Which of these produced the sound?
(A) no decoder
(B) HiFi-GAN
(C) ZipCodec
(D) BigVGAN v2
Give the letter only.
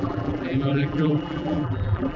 D